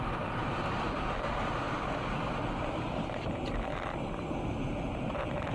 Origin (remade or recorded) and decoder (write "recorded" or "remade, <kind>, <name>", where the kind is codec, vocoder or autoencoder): remade, vocoder, BigVGAN v2